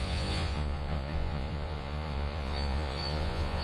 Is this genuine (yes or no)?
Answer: no